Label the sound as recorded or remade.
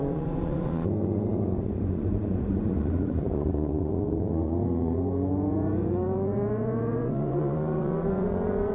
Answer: remade